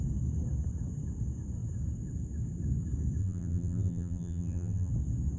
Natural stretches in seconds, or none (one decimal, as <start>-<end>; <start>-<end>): 0.0-3.2; 4.9-5.4